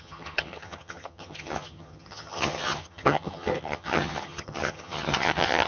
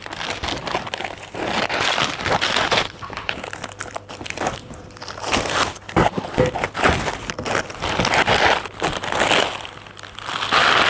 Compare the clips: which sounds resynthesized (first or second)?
first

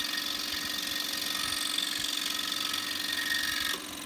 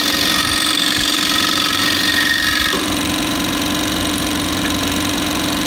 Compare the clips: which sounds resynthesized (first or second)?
second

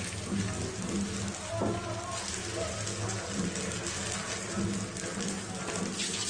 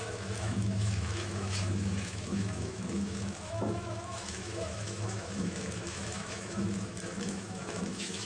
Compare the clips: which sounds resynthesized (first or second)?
second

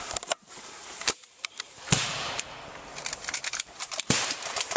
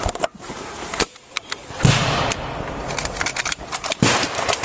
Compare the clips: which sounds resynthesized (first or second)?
first